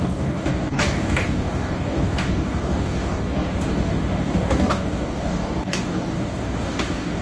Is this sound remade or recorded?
remade